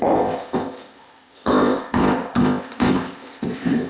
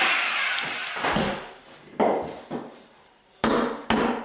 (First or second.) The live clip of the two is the second